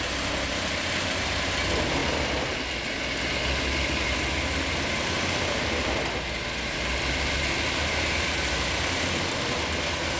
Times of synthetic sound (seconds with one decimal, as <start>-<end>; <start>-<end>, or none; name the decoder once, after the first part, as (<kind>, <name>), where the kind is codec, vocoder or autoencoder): none